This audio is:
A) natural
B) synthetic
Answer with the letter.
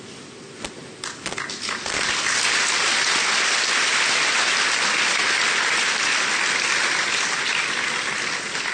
A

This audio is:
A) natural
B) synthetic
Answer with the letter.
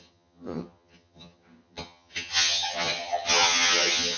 B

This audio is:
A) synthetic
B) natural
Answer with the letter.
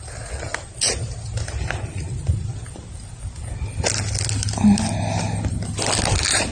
B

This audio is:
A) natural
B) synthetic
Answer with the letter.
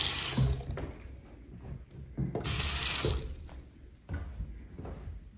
A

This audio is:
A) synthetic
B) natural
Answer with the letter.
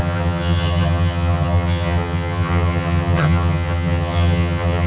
A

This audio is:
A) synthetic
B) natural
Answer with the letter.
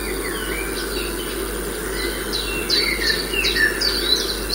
B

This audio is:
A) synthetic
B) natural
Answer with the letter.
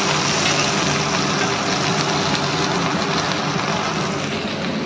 B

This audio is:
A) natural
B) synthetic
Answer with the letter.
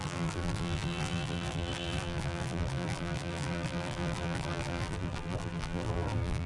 B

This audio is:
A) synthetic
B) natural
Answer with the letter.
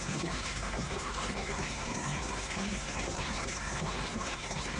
A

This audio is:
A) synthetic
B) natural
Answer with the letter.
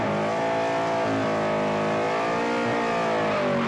B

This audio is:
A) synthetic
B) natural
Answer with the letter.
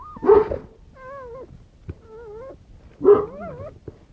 B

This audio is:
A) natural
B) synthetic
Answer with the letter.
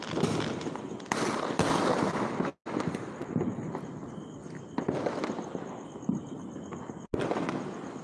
A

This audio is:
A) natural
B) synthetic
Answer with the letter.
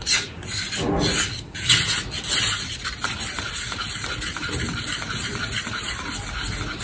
A